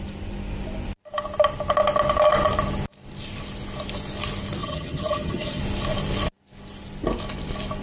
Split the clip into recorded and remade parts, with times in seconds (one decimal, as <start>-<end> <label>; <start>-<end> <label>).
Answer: 0.0-4.6 recorded; 4.6-5.6 remade; 5.6-7.8 recorded